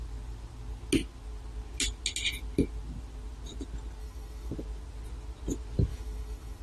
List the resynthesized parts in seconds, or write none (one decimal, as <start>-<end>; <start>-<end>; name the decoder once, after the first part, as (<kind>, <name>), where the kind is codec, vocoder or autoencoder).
4.0-4.5 (autoencoder, DAC-VAE); 5.9-6.6